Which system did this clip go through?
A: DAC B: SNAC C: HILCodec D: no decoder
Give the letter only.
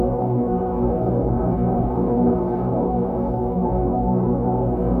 A